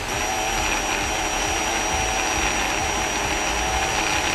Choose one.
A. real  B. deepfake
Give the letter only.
A